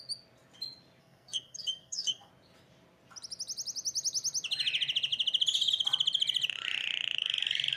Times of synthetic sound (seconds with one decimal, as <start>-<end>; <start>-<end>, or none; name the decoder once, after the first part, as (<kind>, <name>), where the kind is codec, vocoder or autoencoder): 1.0-2.3 (codec, SNAC)